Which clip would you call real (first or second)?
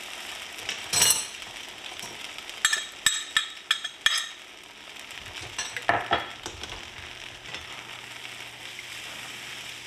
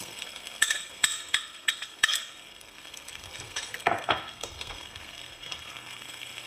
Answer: first